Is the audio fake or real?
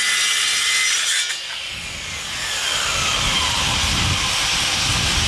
real